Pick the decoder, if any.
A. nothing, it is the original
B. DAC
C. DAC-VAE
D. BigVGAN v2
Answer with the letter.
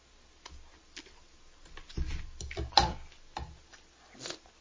A